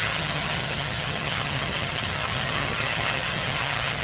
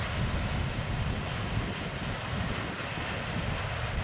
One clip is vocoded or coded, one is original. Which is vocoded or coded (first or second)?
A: first